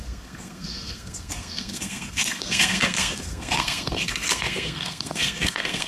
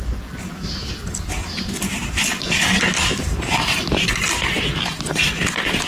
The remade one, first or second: first